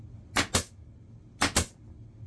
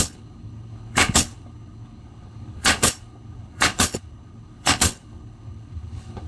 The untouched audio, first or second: first